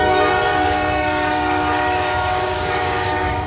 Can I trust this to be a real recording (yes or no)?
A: no